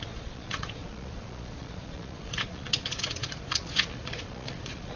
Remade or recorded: remade